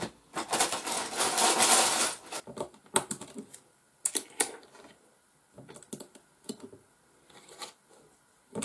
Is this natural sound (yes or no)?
yes